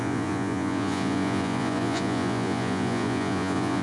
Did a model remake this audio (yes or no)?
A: yes